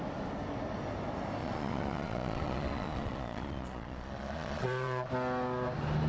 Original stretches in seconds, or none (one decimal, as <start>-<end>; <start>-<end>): 0.0-1.4; 5.1-6.1